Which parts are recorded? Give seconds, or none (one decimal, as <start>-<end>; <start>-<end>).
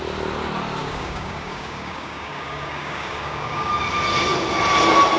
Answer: 0.0-0.8; 3.7-5.2